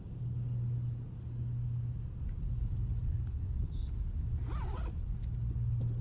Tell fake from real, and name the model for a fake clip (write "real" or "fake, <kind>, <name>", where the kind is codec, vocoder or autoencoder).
real